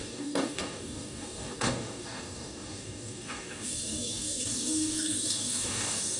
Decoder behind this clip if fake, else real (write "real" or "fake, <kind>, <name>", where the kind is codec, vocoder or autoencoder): fake, codec, DAC